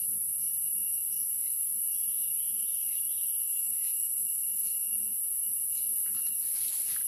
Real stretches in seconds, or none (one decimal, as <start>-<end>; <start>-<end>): 0.0-1.0; 4.2-7.1